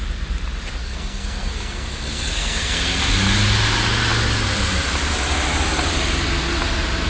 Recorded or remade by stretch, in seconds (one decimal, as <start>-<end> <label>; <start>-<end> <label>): 0.0-0.8 recorded; 0.8-3.0 remade; 3.0-7.1 recorded